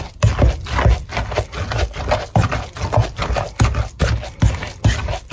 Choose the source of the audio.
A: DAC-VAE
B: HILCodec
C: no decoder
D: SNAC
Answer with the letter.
C